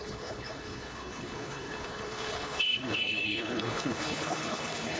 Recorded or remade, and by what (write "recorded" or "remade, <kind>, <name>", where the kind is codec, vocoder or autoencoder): remade, codec, HILCodec